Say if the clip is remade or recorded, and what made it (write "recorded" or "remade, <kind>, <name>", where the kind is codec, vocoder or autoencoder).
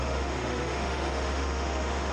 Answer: remade, autoencoder, DAC-VAE